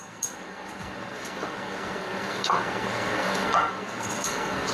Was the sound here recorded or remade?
remade